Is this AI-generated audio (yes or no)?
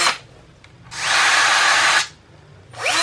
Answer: no